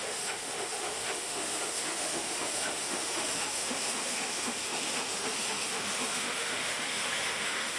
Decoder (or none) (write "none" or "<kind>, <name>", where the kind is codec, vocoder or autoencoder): autoencoder, DAC-VAE